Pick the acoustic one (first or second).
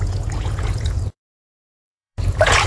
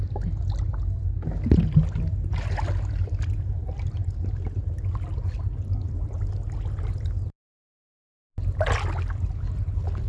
second